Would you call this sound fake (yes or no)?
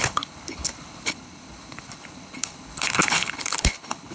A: yes